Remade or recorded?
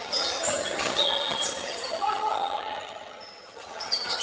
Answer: remade